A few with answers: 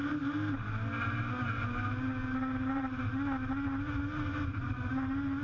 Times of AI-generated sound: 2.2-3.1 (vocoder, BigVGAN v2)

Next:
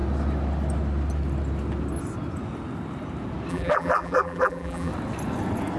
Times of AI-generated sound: 3.5-4.9 (vocoder, BigVGAN v2)